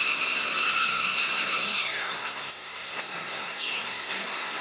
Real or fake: fake